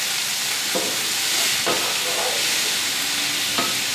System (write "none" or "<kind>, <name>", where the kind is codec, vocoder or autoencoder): none